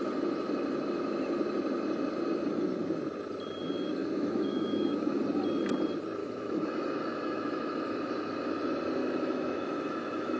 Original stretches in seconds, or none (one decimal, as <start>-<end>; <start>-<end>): 0.0-4.0; 5.2-6.2; 8.5-9.0